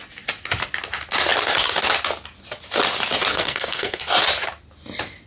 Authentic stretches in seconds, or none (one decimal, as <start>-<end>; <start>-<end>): 0.0-3.3; 4.0-5.3